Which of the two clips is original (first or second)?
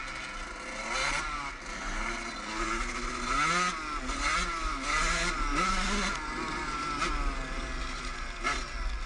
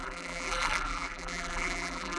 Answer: first